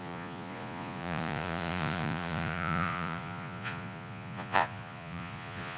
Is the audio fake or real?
fake